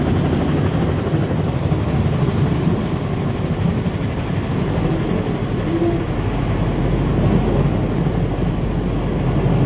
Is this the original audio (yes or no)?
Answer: yes